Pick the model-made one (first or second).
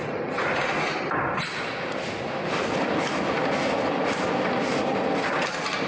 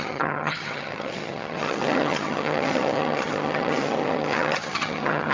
second